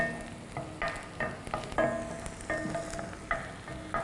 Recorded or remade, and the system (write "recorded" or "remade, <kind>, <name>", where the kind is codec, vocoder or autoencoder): recorded